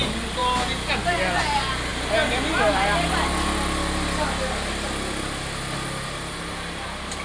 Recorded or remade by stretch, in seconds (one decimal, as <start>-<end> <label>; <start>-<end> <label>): 0.0-7.2 recorded